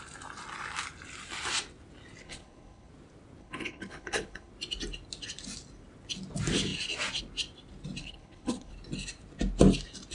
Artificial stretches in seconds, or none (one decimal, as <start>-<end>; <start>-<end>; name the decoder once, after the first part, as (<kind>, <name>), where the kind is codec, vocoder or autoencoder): 2.2-2.9 (codec, HILCodec); 3.4-4.5; 8.0-8.7